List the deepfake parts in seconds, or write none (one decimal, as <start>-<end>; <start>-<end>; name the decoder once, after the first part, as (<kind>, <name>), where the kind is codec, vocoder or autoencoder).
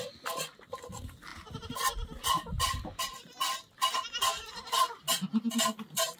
none